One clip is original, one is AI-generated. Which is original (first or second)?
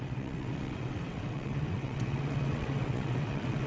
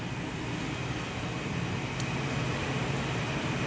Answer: second